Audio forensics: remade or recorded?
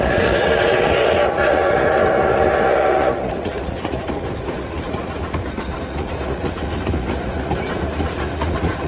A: remade